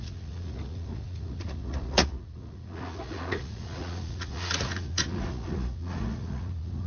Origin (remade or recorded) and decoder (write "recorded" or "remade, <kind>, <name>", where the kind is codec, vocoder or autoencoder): remade, vocoder, Vocos